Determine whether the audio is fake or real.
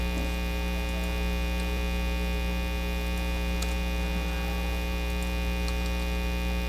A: real